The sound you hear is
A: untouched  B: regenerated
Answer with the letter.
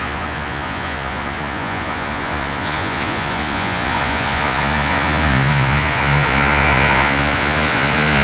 B